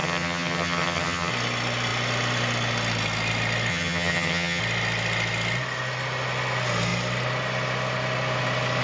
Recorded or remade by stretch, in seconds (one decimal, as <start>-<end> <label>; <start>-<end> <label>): 0.0-1.3 remade; 1.3-3.7 recorded; 3.7-4.6 remade; 4.6-8.8 recorded